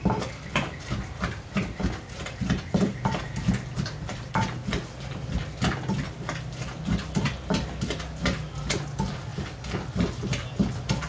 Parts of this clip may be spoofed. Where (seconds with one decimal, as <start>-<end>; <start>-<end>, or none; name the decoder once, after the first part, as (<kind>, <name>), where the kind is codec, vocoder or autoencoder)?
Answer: none